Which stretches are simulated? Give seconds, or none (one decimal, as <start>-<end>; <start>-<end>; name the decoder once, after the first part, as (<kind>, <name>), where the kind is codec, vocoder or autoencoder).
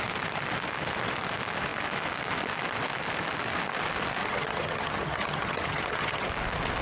4.2-6.3 (vocoder, HiFi-GAN)